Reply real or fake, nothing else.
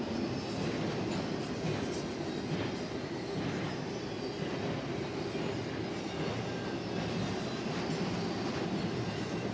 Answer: real